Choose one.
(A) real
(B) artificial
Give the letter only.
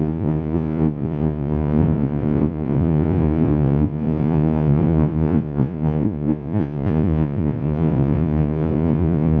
B